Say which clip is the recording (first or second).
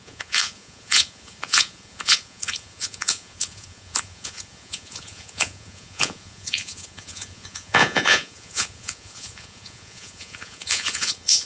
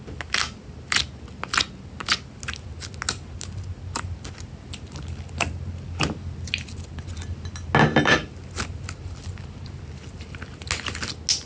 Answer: second